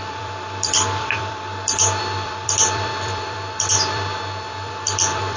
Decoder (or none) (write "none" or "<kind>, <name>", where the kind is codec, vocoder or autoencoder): vocoder, BigVGAN v2